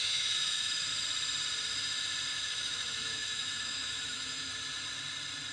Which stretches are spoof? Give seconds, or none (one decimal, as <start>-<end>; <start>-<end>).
0.0-0.9; 2.3-4.5